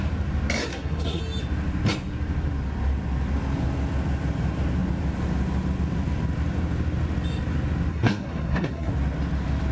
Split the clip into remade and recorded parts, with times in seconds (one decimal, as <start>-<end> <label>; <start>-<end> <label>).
0.0-0.7 recorded; 0.7-1.2 remade; 1.2-7.9 recorded; 7.9-8.9 remade; 8.9-9.7 recorded